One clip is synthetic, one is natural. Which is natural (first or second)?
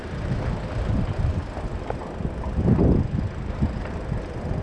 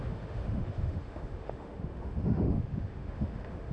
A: first